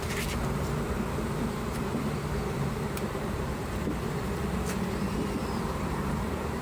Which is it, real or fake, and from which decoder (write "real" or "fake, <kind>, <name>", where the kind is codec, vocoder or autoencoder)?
fake, vocoder, BigVGAN v2